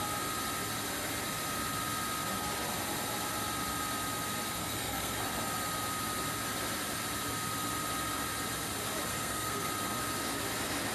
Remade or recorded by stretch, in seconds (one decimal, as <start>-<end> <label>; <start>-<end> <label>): 0.0-4.6 recorded; 4.6-5.2 remade; 5.2-9.1 recorded; 9.1-9.7 remade; 9.7-10.9 recorded